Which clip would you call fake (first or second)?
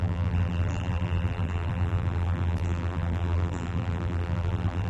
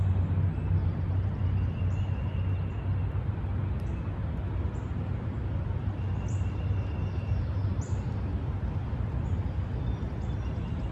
first